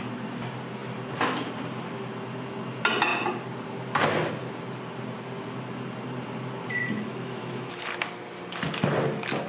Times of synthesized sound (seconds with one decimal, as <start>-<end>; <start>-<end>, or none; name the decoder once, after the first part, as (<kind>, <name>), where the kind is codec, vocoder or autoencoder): 6.8-7.9 (autoencoder, DAC-VAE)